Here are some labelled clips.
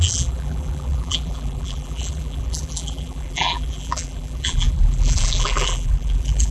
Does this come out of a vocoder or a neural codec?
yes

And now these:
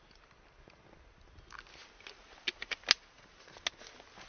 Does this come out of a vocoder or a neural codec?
no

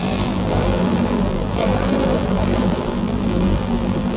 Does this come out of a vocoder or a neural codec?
yes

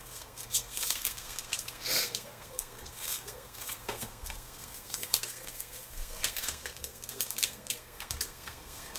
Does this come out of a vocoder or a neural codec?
yes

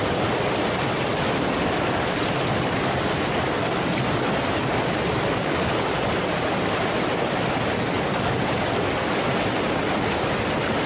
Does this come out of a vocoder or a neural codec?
no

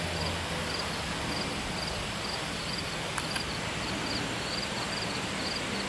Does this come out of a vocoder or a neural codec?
no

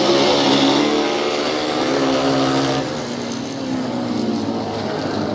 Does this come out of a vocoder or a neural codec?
no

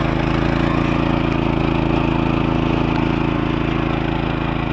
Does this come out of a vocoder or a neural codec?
no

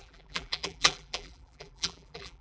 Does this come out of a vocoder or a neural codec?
yes